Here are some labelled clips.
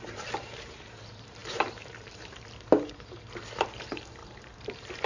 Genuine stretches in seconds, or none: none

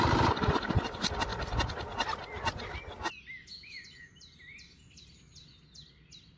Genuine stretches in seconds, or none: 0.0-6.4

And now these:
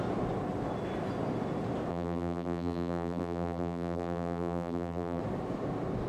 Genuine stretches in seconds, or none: 0.0-1.9; 5.2-6.1

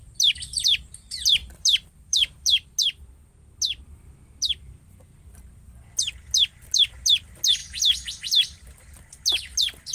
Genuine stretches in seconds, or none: 0.0-1.4; 2.7-9.9

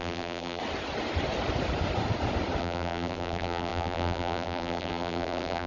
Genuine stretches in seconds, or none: 0.6-2.6